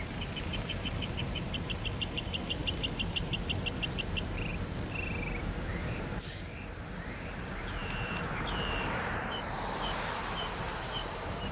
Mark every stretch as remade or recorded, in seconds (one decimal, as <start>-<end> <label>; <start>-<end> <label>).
0.0-2.6 remade; 2.6-3.9 recorded; 3.9-4.5 remade; 4.5-5.6 recorded; 5.6-11.5 remade